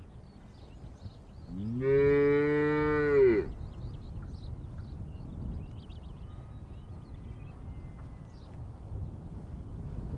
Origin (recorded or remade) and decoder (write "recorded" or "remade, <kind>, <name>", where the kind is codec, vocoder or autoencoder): recorded